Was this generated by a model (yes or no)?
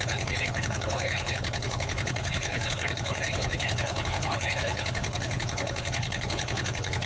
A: yes